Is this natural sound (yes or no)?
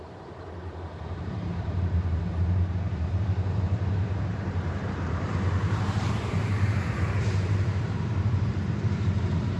no